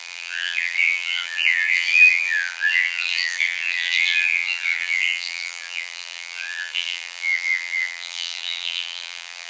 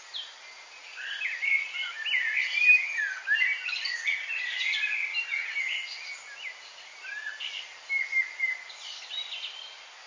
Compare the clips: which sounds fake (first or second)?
first